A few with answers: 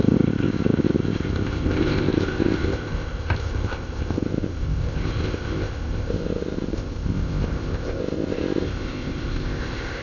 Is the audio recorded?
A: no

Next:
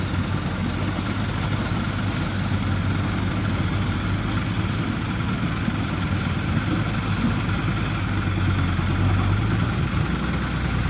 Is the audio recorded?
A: yes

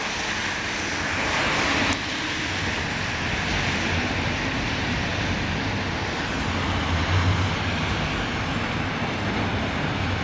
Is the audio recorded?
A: yes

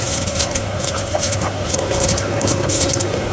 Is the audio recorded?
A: no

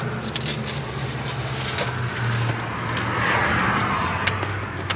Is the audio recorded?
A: yes